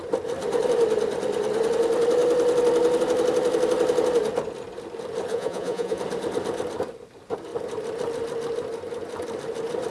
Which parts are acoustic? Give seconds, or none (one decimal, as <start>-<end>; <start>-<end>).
0.0-5.3; 6.0-9.9